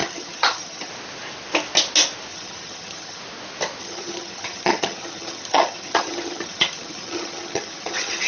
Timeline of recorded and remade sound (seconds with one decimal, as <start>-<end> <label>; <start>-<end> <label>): 0.0-0.9 remade; 0.9-2.3 recorded; 2.3-3.2 remade; 3.2-3.8 recorded; 3.8-8.3 remade